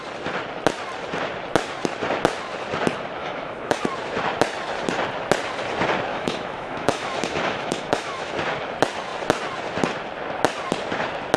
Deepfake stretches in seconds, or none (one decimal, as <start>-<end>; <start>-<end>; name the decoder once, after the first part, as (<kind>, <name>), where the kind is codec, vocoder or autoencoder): 3.2-3.8 (autoencoder, DAC-VAE); 6.1-8.3